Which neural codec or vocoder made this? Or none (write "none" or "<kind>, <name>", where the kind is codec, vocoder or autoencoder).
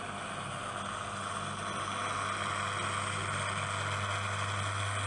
none